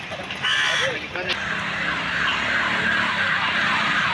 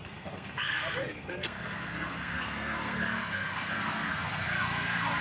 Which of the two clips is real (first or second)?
first